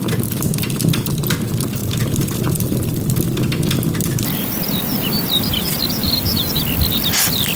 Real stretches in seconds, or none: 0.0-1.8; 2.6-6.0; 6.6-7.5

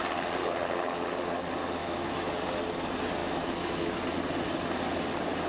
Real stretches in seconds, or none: 0.0-1.8; 2.3-3.2; 4.0-5.5